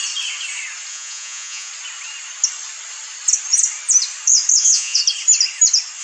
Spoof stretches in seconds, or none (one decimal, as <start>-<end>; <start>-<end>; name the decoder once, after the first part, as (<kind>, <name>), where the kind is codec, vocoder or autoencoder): 0.9-1.7 (vocoder, Vocos); 4.6-5.0

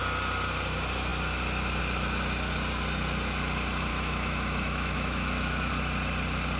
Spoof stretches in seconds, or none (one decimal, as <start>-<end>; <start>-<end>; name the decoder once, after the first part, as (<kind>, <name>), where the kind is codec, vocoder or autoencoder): 3.9-5.7 (autoencoder, DAC-VAE)

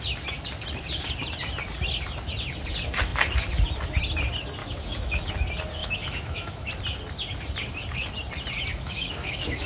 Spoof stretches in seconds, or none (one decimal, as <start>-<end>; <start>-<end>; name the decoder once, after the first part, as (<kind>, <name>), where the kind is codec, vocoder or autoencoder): 4.6-5.3 (autoencoder, DAC-VAE); 5.8-6.7; 8.7-9.7

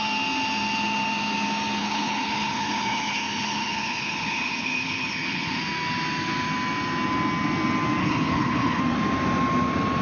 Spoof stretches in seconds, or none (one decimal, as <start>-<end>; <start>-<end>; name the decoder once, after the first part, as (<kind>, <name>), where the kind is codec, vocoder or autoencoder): 1.8-5.6 (codec, HILCodec); 8.0-8.8

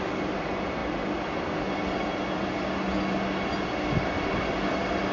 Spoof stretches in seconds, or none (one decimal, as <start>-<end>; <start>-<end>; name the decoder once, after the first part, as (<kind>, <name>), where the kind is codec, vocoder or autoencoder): none

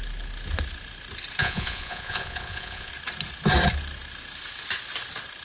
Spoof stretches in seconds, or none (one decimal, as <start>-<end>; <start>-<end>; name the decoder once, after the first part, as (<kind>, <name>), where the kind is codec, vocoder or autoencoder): 1.4-2.9 (vocoder, Vocos)

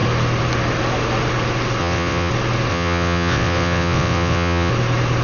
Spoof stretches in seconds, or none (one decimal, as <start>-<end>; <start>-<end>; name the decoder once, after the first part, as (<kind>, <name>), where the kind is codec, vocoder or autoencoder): 1.8-2.3 (vocoder, WaveNeXt); 2.7-4.7